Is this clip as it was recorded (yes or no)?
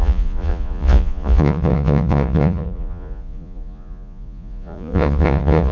no